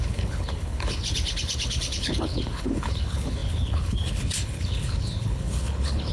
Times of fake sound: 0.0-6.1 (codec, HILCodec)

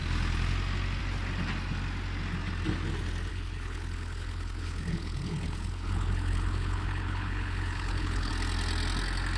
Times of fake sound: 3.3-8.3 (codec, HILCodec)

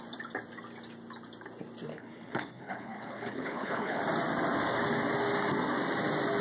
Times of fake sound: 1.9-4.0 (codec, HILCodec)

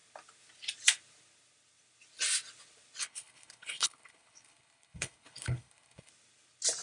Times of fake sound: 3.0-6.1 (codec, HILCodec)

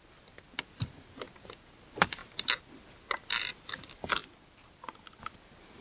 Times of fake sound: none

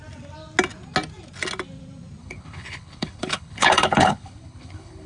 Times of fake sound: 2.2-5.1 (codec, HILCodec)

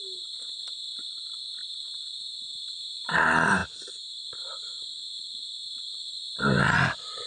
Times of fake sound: none